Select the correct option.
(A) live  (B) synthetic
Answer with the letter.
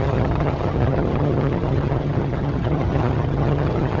B